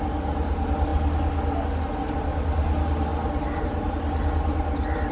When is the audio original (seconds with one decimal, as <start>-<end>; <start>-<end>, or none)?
0.0-5.1